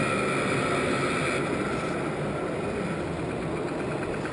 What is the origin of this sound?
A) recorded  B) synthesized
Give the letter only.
A